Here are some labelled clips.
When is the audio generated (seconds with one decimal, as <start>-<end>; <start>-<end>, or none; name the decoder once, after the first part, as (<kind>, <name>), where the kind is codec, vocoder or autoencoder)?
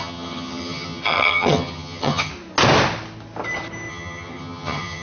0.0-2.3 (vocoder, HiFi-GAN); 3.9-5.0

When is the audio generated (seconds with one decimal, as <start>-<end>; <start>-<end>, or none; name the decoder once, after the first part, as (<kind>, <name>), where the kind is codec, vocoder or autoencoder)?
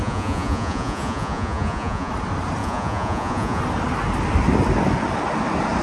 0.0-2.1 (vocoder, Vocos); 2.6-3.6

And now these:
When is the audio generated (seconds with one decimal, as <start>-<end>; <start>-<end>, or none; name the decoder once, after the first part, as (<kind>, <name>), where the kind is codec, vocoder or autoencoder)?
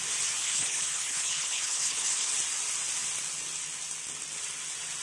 0.4-2.3 (codec, HILCodec)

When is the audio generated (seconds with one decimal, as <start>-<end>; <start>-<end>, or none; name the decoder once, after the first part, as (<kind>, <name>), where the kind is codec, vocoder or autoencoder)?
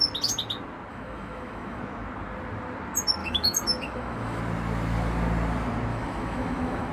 0.9-1.8 (autoencoder, DAC-VAE); 3.2-4.4; 5.9-6.9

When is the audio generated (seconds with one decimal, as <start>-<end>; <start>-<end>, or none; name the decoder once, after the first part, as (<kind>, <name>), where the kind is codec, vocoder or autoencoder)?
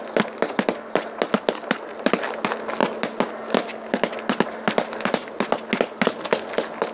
none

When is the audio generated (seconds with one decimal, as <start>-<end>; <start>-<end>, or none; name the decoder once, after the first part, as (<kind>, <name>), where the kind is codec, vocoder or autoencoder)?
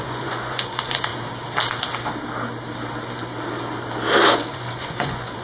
0.0-1.1 (vocoder, Vocos); 4.3-5.4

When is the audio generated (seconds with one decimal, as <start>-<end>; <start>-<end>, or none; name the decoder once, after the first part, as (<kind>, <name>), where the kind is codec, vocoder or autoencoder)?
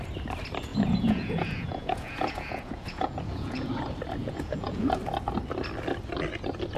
0.7-3.8 (vocoder, Vocos); 4.2-5.0